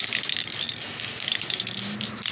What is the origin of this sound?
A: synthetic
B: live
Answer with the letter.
B